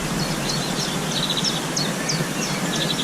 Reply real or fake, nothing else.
real